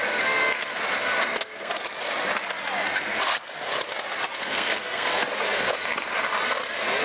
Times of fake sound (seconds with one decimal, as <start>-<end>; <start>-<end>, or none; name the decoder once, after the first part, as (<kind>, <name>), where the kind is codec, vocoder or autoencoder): 1.2-1.7 (codec, SNAC); 4.4-5.1